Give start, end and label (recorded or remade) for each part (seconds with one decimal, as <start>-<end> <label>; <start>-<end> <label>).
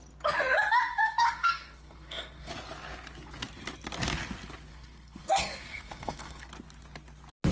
0.0-0.9 recorded; 0.9-2.5 remade; 2.5-4.7 recorded; 4.7-6.5 remade; 6.5-7.5 recorded